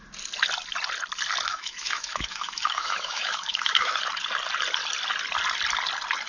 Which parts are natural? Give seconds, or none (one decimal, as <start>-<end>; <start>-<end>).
0.0-1.5; 4.0-6.3